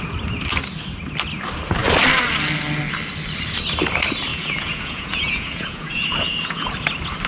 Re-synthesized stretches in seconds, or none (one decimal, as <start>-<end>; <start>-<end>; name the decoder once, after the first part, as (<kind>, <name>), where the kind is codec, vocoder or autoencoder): 4.3-6.7 (vocoder, Vocos)